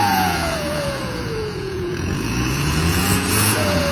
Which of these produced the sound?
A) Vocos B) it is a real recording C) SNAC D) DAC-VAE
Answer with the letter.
A